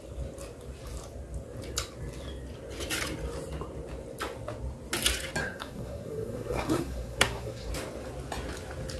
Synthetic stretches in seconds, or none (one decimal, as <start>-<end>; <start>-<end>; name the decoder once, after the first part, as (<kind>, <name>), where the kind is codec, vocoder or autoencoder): 5.4-7.7 (codec, SNAC)